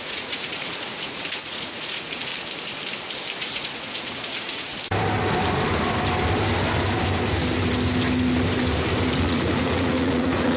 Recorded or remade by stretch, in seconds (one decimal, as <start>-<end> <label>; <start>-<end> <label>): 0.0-2.3 remade; 2.3-3.4 recorded; 3.4-4.7 remade; 4.7-9.2 recorded; 9.2-10.6 remade